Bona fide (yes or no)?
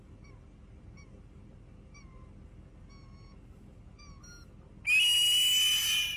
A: yes